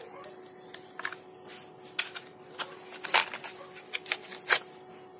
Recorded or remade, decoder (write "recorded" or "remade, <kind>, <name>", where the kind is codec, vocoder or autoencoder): recorded